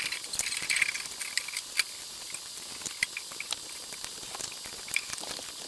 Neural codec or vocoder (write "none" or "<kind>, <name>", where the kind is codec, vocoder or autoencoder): none